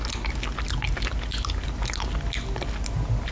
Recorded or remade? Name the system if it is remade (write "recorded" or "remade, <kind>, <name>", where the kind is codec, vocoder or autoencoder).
recorded